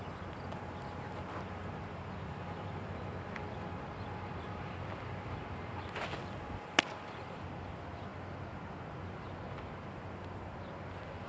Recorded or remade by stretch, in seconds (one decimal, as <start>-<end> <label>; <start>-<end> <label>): 0.0-11.3 recorded